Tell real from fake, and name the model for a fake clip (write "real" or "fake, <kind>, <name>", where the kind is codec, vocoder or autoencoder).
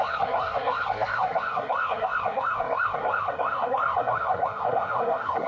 fake, codec, SNAC